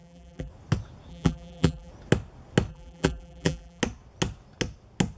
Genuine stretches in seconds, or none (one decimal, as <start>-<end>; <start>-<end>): 0.5-1.1; 1.9-2.7; 3.8-5.2